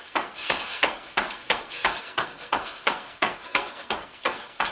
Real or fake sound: fake